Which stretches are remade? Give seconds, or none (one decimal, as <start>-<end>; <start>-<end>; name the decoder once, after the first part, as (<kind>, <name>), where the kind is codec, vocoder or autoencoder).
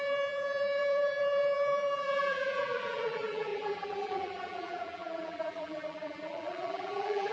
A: 0.0-7.3 (vocoder, BigVGAN v2)